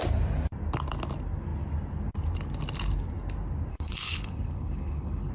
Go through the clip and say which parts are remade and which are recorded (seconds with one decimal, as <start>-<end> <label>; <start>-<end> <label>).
0.0-3.7 recorded; 3.7-5.3 remade